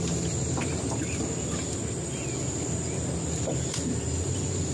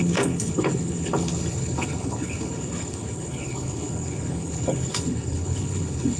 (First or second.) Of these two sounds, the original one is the first